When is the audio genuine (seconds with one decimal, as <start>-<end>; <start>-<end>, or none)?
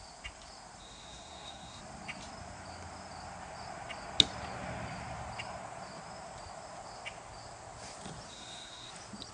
0.0-0.8; 1.8-8.3; 8.9-9.3